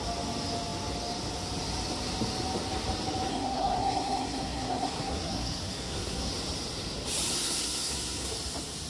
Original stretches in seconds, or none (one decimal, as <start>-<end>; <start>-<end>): 0.0-3.3; 6.3-7.3; 8.3-8.9